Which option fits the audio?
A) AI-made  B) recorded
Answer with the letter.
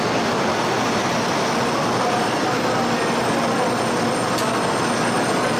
B